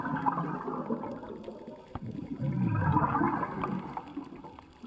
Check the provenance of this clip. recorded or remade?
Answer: recorded